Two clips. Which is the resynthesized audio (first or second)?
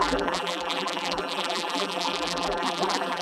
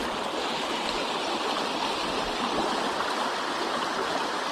first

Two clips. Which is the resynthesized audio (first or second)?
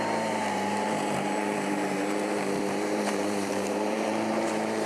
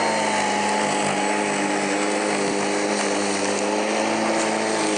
first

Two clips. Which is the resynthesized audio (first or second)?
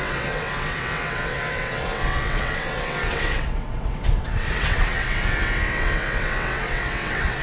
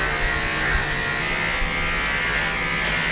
first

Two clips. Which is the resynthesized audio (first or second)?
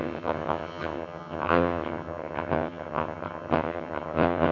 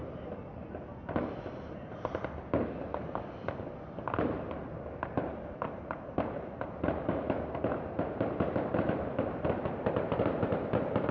first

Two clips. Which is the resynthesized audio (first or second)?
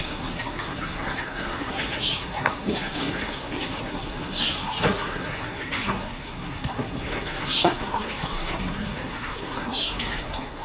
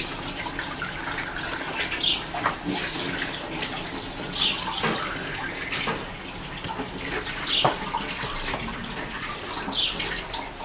first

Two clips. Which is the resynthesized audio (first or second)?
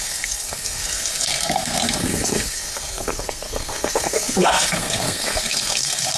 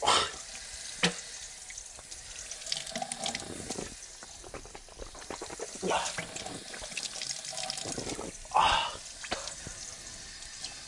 first